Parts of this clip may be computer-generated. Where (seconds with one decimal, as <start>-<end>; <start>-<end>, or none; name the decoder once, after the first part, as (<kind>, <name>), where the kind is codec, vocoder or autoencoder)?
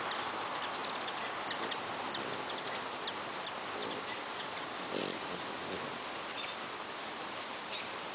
3.8-4.3 (vocoder, BigVGAN v2)